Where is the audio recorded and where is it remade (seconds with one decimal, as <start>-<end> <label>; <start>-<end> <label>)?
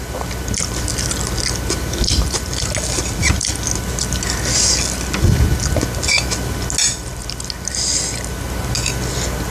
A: 0.0-9.5 recorded